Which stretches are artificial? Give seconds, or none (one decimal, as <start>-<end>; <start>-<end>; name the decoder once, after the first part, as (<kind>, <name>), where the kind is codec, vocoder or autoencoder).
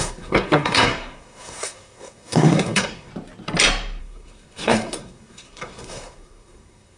0.0-3.1 (codec, SNAC); 4.0-7.0